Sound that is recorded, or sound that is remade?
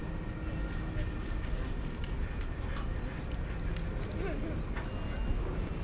recorded